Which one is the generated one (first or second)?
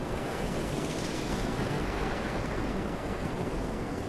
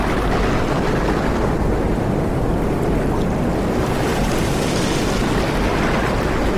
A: first